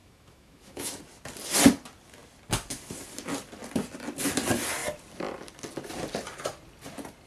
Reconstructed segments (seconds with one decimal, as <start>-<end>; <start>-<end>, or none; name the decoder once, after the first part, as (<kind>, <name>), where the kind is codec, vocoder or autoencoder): 0.0-1.0 (autoencoder, DAC-VAE)